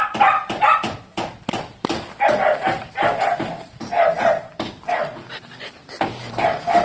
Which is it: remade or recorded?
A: recorded